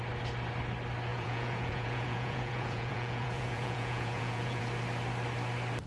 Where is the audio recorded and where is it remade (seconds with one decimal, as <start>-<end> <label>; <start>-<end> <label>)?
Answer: 0.0-1.1 recorded; 1.1-4.6 remade; 4.6-5.9 recorded